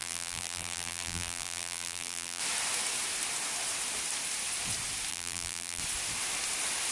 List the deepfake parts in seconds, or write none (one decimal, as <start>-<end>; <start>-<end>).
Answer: 0.0-2.4; 5.1-5.8